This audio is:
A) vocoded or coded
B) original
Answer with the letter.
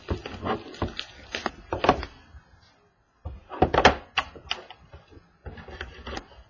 B